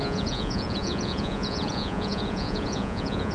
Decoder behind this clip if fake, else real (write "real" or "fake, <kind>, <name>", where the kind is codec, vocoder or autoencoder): fake, vocoder, Vocos